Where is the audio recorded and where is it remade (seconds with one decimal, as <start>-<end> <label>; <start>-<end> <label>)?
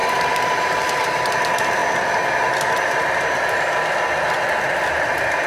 0.0-1.8 remade; 1.8-5.1 recorded; 5.1-5.5 remade